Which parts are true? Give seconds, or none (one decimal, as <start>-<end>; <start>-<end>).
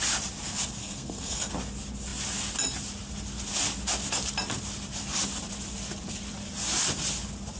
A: 0.0-0.8; 1.5-7.6